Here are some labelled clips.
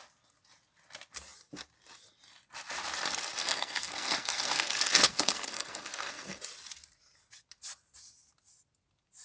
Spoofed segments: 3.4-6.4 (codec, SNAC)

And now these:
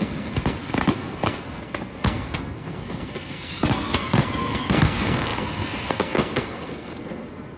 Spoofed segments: 0.0-7.6 (codec, SNAC)

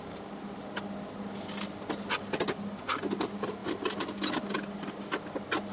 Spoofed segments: none

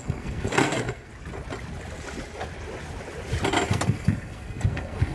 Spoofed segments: 0.0-1.1 (codec, SNAC); 3.7-5.1

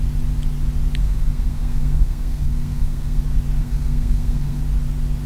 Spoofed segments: 1.0-3.2 (codec, SNAC); 3.6-4.6

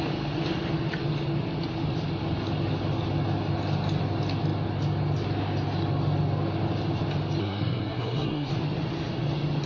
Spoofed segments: 7.4-8.5 (codec, SNAC)

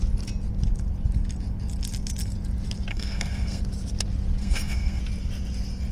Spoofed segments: 2.9-3.6 (codec, SNAC); 4.4-5.0

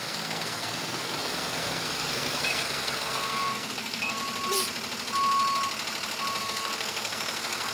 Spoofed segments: 0.0-4.2 (codec, SNAC); 6.4-7.7